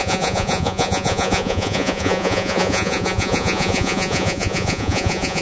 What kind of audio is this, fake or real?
fake